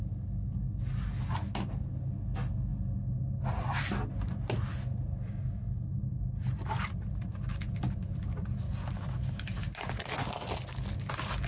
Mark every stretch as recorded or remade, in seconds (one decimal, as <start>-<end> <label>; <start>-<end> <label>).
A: 0.0-11.5 recorded